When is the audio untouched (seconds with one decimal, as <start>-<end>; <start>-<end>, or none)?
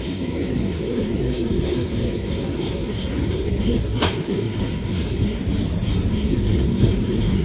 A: 5.4-6.1